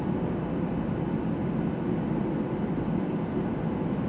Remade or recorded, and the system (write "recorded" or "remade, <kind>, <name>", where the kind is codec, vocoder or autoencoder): recorded